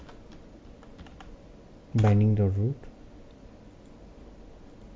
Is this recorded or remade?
recorded